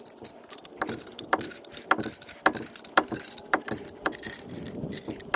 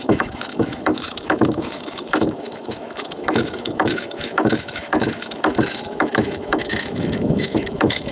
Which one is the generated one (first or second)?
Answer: second